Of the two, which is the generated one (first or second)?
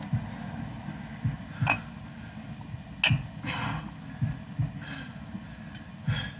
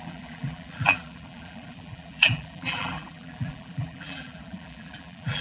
second